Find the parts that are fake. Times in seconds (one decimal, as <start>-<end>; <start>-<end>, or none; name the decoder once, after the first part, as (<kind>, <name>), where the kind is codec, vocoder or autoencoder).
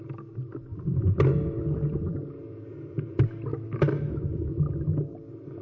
3.5-4.2 (autoencoder, DAC-VAE)